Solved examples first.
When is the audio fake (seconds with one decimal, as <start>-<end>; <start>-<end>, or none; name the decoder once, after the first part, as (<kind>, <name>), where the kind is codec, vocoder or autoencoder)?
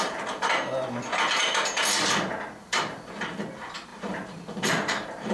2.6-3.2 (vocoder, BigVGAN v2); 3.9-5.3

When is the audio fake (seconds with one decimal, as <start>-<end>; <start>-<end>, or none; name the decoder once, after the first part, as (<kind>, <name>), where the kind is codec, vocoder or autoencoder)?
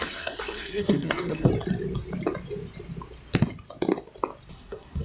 0.0-1.5 (codec, SNAC); 4.5-5.0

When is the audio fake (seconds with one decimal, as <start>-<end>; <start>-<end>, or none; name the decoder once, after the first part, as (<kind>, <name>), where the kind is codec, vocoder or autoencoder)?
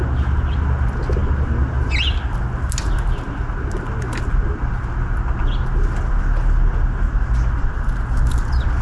none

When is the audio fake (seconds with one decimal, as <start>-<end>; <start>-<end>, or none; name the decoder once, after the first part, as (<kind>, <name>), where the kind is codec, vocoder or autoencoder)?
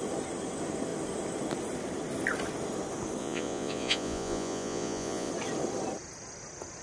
3.2-5.3 (vocoder, Vocos)